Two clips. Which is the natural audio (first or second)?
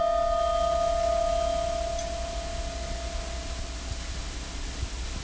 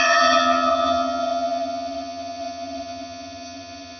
first